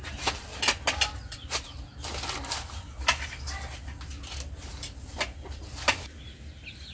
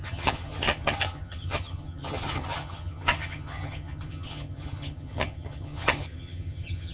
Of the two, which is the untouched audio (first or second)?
first